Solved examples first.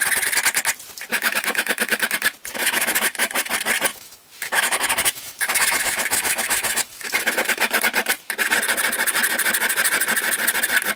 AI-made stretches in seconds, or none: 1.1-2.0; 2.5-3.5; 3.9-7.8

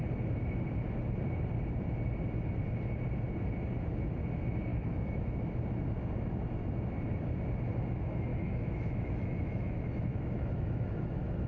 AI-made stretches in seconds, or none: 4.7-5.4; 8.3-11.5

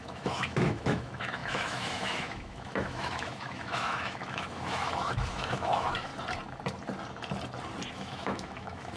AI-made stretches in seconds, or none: 0.0-6.1; 7.9-9.0

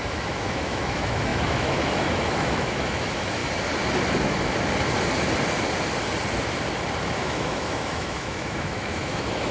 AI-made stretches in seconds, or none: 0.0-3.4; 7.0-9.5